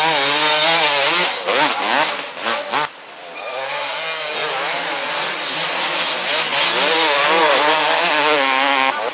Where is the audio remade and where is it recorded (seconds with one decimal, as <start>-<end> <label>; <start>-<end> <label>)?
0.0-9.1 recorded